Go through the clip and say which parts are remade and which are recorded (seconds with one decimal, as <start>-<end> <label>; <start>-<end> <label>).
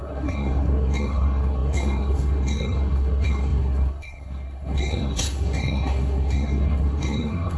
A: 0.0-7.6 remade